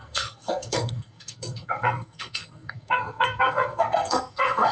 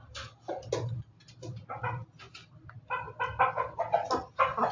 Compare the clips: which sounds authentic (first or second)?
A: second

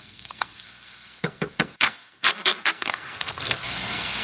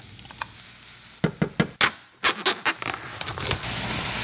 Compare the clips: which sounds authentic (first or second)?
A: second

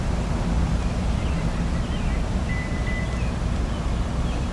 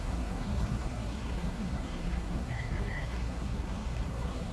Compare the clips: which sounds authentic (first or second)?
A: first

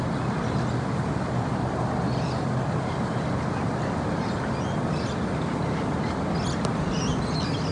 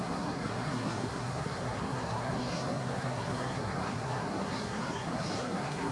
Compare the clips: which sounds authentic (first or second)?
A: first